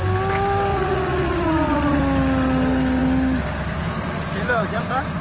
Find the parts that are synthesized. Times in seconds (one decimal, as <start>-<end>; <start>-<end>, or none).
0.7-2.0